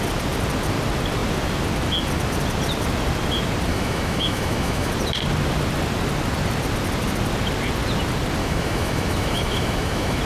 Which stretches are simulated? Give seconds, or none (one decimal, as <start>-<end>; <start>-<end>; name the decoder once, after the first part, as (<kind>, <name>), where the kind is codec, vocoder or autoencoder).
3.7-4.9 (autoencoder, DAC-VAE); 8.4-10.2

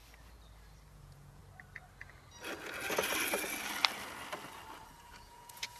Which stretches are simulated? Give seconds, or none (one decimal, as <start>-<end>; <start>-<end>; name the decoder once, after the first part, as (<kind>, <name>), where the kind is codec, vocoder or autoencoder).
0.9-1.4 (vocoder, Vocos); 4.9-5.8

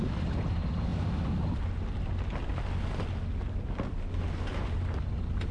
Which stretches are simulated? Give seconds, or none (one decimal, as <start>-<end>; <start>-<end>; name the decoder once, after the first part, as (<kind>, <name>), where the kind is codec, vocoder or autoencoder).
none

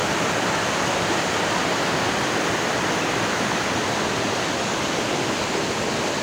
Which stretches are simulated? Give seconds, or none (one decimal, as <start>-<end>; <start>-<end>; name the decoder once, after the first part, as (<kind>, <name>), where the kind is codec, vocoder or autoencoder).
none